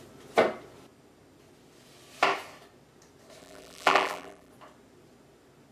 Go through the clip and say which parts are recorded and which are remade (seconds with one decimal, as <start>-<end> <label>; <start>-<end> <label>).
0.0-3.4 recorded; 3.4-4.5 remade; 4.5-5.7 recorded

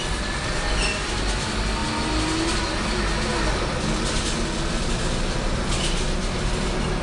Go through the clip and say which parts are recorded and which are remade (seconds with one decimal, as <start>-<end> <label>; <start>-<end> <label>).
0.0-7.0 recorded

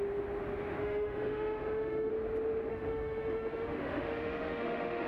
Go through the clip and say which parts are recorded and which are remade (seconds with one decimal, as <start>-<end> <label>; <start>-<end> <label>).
0.0-0.8 recorded; 0.8-2.1 remade; 2.1-2.7 recorded; 2.7-5.1 remade